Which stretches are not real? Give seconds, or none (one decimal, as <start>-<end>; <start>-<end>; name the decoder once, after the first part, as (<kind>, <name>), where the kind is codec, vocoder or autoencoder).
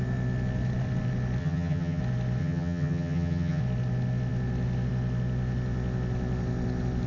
1.4-2.0 (vocoder, HiFi-GAN); 2.4-3.6